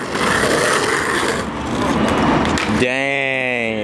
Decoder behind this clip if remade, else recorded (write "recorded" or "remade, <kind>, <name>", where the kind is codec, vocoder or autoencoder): recorded